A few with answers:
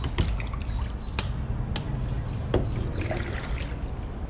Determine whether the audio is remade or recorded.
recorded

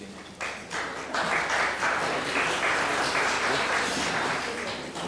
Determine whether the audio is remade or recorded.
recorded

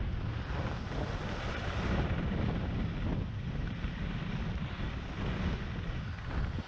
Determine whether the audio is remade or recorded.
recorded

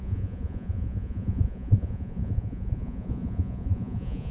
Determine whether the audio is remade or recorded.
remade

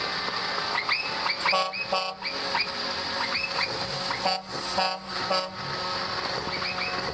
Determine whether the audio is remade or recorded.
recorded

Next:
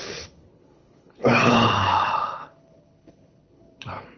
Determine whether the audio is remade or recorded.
remade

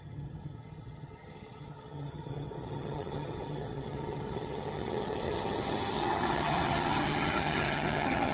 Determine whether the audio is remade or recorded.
remade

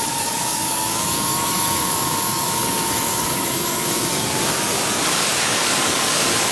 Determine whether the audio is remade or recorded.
remade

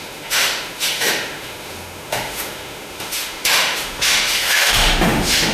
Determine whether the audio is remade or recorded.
remade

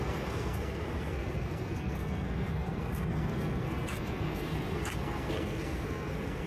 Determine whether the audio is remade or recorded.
remade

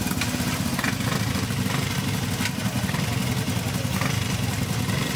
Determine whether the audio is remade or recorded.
recorded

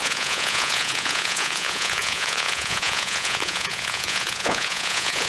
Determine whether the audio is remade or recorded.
remade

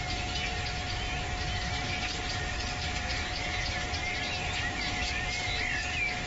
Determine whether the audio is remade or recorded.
recorded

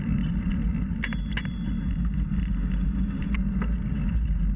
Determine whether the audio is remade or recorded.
recorded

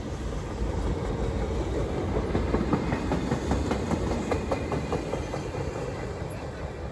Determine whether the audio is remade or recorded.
remade